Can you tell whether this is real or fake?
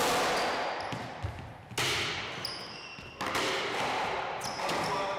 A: real